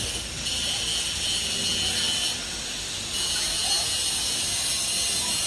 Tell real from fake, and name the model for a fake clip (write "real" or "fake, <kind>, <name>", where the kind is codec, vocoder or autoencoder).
real